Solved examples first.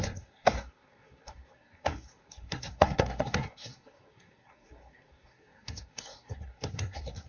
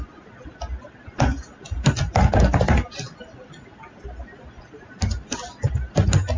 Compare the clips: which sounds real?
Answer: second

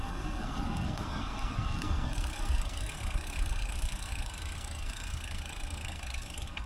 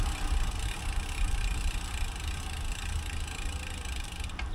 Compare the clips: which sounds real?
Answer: second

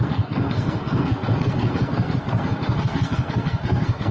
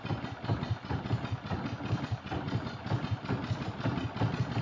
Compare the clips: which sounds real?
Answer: second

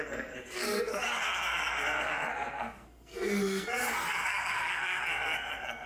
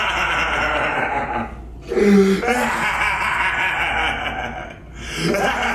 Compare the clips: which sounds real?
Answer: second